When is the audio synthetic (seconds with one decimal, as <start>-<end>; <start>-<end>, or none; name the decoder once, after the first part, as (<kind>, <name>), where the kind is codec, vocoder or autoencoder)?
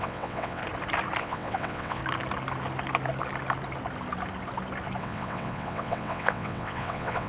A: 0.0-0.6 (vocoder, WaveNeXt); 1.2-2.0; 5.0-7.3